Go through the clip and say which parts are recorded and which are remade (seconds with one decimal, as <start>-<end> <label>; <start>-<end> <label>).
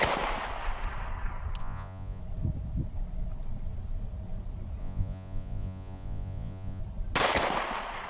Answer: 0.0-1.6 recorded; 1.6-2.2 remade; 2.2-4.8 recorded; 4.8-6.8 remade; 6.8-8.1 recorded